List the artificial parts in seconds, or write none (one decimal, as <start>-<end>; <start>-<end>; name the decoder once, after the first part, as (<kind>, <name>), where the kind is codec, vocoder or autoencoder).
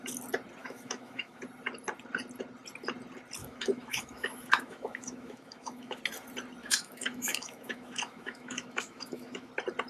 0.6-1.4 (autoencoder, DAC-VAE); 3.4-6.0; 6.6-9.5